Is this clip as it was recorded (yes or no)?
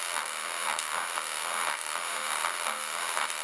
no